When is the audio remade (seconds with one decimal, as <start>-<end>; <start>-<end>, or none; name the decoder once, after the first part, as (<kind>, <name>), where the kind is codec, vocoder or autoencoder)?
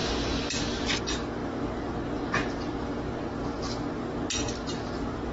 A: none